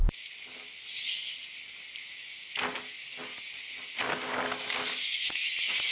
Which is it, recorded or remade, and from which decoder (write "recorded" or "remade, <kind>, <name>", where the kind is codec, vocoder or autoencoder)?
recorded